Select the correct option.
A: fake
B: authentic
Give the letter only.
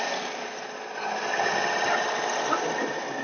B